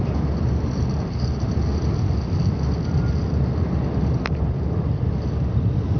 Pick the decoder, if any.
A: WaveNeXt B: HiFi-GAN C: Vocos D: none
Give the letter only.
D